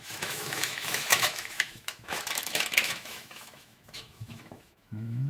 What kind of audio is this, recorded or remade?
remade